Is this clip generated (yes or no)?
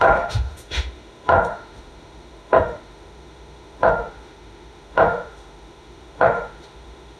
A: yes